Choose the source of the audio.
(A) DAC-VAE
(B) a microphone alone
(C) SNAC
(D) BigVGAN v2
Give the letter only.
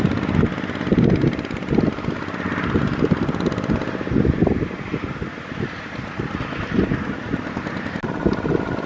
B